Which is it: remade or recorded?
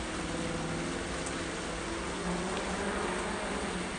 recorded